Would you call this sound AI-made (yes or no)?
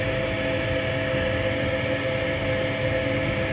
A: no